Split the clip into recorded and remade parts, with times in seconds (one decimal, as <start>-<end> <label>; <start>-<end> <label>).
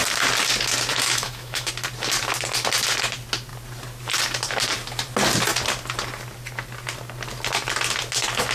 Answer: 0.0-0.9 recorded; 0.9-1.7 remade; 1.7-8.5 recorded